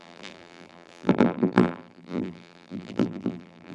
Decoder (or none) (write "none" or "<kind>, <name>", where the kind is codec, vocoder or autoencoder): vocoder, BigVGAN v2